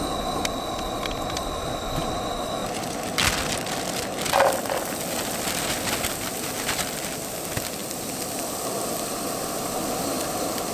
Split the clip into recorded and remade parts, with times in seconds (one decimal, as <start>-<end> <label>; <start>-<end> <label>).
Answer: 0.0-10.7 recorded